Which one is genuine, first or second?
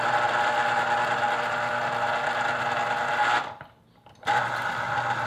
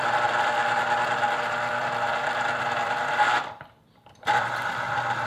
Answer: first